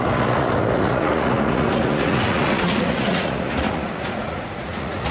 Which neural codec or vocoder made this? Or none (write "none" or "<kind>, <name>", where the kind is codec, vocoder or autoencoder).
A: vocoder, Vocos